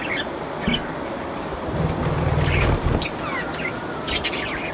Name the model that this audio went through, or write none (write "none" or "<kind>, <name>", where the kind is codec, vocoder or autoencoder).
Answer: none